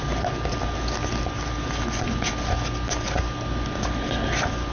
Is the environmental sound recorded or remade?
recorded